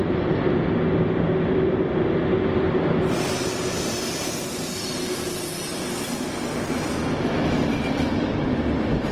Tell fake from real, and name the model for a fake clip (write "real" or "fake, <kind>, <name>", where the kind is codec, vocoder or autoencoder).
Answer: real